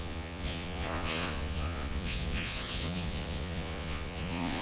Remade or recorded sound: remade